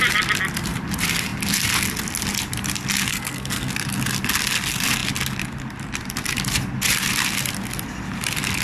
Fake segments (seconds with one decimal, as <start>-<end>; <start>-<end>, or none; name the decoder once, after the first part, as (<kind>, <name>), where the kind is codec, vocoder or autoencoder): 3.1-3.7 (codec, SNAC)